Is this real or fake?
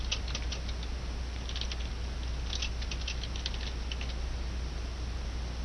real